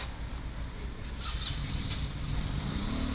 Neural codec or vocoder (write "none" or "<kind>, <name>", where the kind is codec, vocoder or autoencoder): none